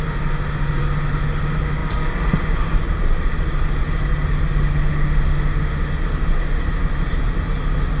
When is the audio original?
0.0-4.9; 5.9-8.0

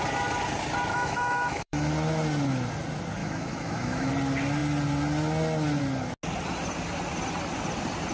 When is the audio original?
0.0-0.9; 1.9-3.2; 4.1-8.1

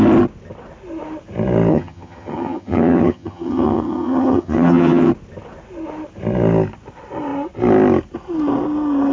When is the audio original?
0.0-1.7; 5.1-9.1

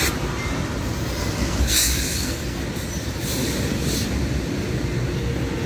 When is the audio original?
0.0-1.2; 2.6-5.7

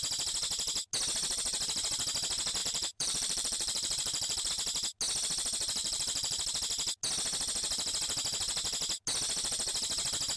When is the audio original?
0.0-2.6; 4.5-5.8; 6.6-10.4

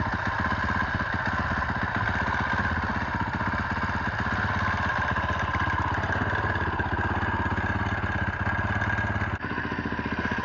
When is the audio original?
0.0-10.4